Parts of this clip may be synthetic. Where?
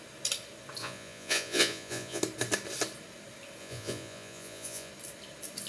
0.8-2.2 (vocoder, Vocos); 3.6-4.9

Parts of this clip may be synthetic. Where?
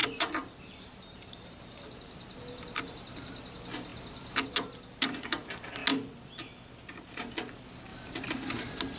0.0-2.4 (vocoder, BigVGAN v2); 7.9-8.5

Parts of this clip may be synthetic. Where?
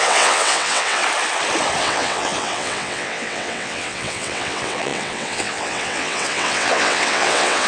0.0-1.0 (vocoder, WaveNeXt); 1.8-7.7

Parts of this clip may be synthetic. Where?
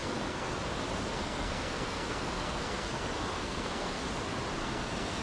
0.0-0.6 (codec, SNAC); 1.1-4.0; 4.6-5.2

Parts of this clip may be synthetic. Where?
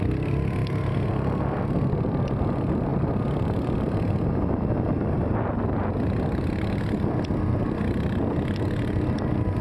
0.0-0.6 (vocoder, BigVGAN v2); 1.9-9.6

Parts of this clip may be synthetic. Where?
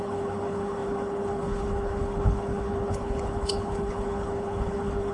0.0-5.1 (codec, HILCodec)